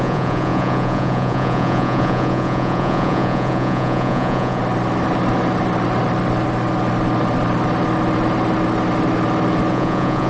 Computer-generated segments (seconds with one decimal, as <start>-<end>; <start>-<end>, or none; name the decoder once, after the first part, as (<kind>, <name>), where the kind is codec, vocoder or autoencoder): 0.0-4.6 (vocoder, Vocos); 9.7-10.3